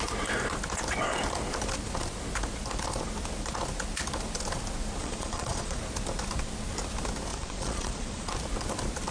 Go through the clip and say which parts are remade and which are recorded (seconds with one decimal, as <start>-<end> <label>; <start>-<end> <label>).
0.0-5.0 recorded; 5.0-5.8 remade; 5.8-7.3 recorded; 7.3-8.3 remade; 8.3-9.1 recorded

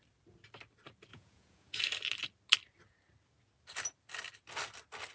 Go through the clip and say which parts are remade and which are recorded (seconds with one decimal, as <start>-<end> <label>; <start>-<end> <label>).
0.0-1.1 recorded; 1.1-1.8 remade; 1.8-5.1 recorded

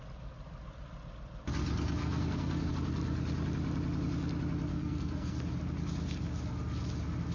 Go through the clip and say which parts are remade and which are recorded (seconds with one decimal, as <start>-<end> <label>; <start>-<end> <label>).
0.0-2.0 recorded; 2.0-2.7 remade; 2.7-4.7 recorded; 4.7-5.4 remade; 5.4-7.3 recorded

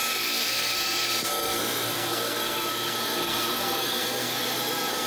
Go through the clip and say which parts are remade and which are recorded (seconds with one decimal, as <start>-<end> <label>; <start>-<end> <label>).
0.0-5.1 remade

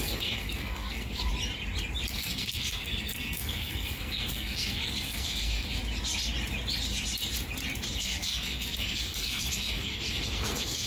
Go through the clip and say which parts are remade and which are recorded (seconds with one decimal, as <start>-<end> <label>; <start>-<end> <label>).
0.0-1.3 remade; 1.3-2.1 recorded; 2.1-5.8 remade; 5.8-8.0 recorded; 8.0-10.9 remade

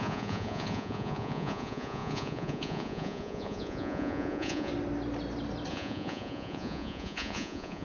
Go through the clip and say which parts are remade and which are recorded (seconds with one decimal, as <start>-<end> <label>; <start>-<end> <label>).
0.0-4.7 remade; 4.7-5.7 recorded; 5.7-7.8 remade